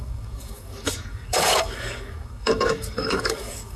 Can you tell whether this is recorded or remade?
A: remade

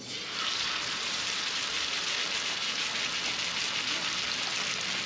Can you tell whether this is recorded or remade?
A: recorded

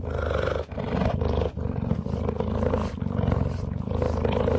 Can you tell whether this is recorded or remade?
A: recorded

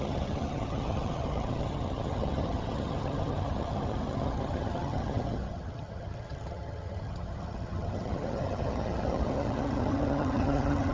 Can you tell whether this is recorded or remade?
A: remade